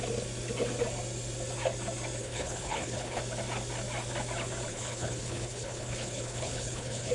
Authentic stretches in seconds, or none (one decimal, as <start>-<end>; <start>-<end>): 0.0-2.2; 3.2-4.7